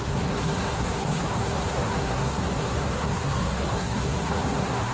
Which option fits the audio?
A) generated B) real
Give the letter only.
A